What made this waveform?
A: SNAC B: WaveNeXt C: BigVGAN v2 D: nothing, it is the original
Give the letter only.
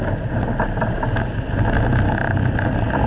D